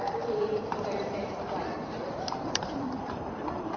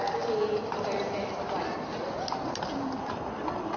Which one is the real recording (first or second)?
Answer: second